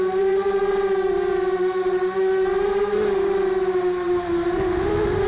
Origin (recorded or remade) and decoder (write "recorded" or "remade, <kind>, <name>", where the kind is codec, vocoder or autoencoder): remade, vocoder, BigVGAN v2